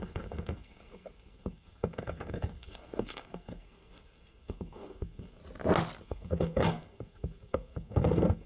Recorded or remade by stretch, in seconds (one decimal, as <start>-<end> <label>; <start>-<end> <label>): 0.0-5.4 remade; 5.4-6.0 recorded; 6.0-8.5 remade